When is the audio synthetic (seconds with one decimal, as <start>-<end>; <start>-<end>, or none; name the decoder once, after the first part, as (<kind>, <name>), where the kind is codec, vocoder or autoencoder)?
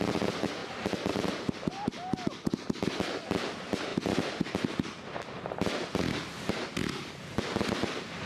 3.9-4.5 (vocoder, BigVGAN v2)